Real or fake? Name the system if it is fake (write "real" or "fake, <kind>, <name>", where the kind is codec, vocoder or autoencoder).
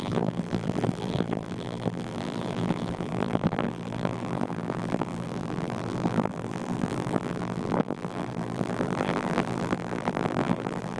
fake, vocoder, BigVGAN v2